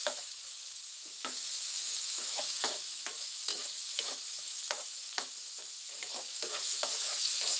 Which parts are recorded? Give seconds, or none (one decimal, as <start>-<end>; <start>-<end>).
none